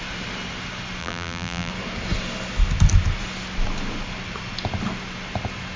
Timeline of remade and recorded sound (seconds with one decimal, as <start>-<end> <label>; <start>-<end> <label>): 0.0-1.0 recorded; 1.0-1.7 remade; 1.7-5.8 recorded